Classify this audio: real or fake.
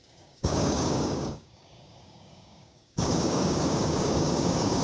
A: fake